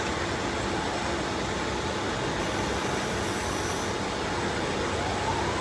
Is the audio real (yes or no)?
yes